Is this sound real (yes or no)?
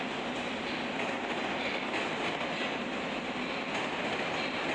yes